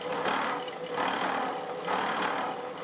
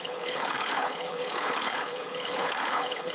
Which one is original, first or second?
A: first